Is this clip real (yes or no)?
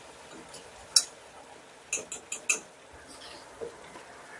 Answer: yes